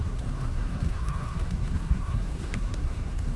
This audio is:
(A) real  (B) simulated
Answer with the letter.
B